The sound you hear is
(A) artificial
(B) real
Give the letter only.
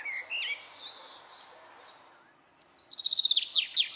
B